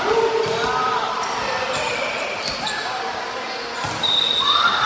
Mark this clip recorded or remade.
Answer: recorded